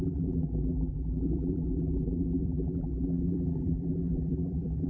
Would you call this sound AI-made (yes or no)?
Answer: yes